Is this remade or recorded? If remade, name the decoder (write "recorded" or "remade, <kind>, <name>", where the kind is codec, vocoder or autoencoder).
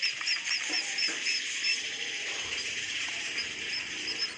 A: remade, vocoder, BigVGAN v2